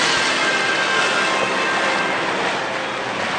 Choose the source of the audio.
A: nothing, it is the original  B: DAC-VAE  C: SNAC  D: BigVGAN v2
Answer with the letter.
A